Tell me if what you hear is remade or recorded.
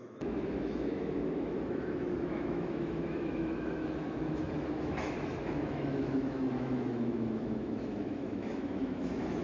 remade